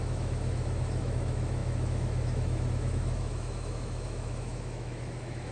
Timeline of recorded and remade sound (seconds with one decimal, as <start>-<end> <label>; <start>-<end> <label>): 0.0-5.5 remade